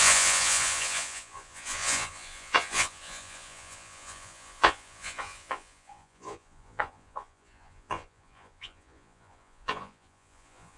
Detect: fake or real fake